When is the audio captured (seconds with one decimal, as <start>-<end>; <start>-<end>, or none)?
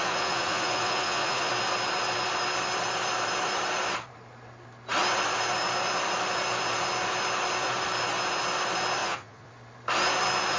1.5-9.0; 9.5-10.6